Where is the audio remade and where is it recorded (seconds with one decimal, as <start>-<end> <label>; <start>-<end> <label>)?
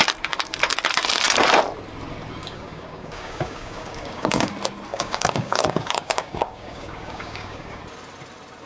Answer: 0.0-2.4 recorded; 2.4-4.5 remade; 4.5-4.9 recorded; 4.9-7.8 remade; 7.8-8.7 recorded